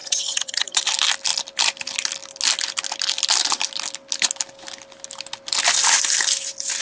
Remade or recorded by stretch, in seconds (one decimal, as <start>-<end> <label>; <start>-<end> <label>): 0.0-0.8 remade; 0.8-6.8 recorded